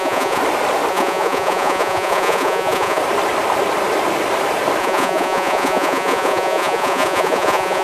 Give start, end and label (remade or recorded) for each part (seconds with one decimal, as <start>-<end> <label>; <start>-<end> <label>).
0.0-0.4 remade; 0.4-0.9 recorded; 0.9-3.0 remade; 3.0-4.8 recorded; 4.8-7.8 remade